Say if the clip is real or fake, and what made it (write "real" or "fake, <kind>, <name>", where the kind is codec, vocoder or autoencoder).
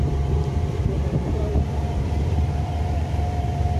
fake, vocoder, BigVGAN v2